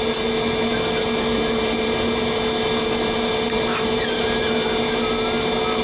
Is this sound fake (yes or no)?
no